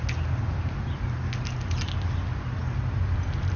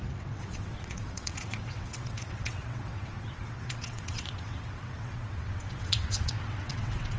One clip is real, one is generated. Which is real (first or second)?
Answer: first